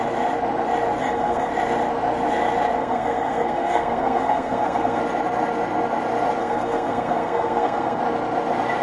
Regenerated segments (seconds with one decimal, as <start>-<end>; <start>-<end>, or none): 1.0-1.5; 2.8-5.0; 6.4-8.0